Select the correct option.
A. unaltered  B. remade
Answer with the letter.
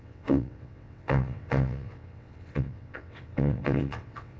B